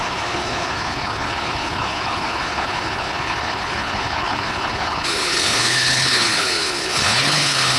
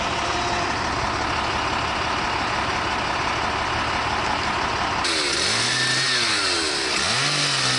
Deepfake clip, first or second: first